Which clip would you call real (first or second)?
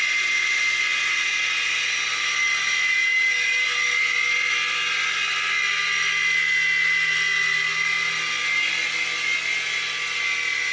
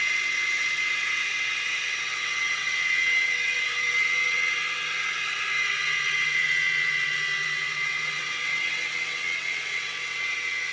first